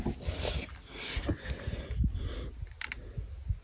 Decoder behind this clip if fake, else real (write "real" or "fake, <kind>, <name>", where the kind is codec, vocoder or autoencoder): real